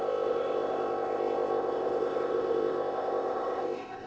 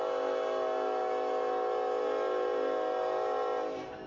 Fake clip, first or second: first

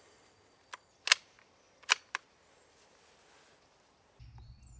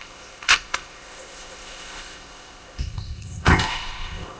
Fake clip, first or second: second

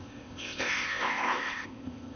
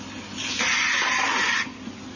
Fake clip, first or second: first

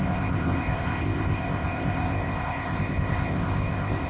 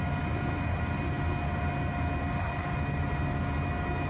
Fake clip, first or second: first